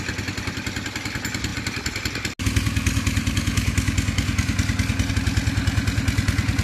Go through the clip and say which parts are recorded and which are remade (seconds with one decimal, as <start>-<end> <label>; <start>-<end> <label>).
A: 0.0-6.6 recorded